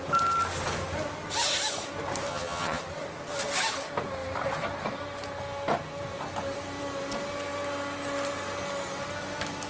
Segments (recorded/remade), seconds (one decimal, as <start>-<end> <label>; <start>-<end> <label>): 0.0-2.3 recorded; 2.3-2.8 remade; 2.8-9.7 recorded

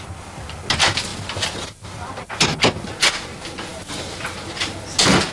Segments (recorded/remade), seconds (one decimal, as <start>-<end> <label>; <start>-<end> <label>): 0.0-1.1 recorded; 1.1-2.3 remade; 2.3-5.3 recorded

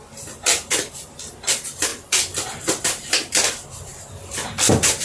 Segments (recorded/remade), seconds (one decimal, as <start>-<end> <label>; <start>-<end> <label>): 0.0-1.9 remade; 1.9-2.6 recorded; 2.6-5.0 remade

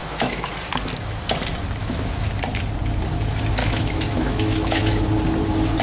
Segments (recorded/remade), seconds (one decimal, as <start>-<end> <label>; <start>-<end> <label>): 0.0-0.5 remade; 0.5-1.8 recorded; 1.8-2.3 remade; 2.3-3.6 recorded; 3.6-5.0 remade; 5.0-5.8 recorded

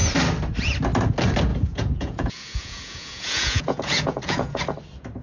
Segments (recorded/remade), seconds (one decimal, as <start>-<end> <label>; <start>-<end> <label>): 0.0-1.5 recorded; 1.5-4.6 remade; 4.6-5.2 recorded

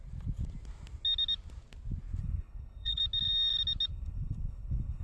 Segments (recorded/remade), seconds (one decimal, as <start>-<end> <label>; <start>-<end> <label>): 0.0-2.2 recorded; 2.2-3.0 remade; 3.0-3.9 recorded; 3.9-5.0 remade

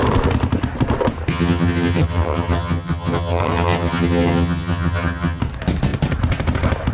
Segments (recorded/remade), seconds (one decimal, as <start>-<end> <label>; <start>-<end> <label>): 0.0-1.3 recorded; 1.3-5.4 remade; 5.4-6.9 recorded